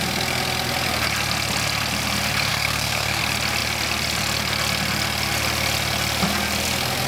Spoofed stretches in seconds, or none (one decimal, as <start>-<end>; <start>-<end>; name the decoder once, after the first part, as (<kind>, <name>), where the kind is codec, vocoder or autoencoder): 2.5-3.2 (codec, SNAC)